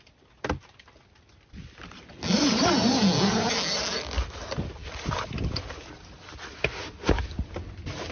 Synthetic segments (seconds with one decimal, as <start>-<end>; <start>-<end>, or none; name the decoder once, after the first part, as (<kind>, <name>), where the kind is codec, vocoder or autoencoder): none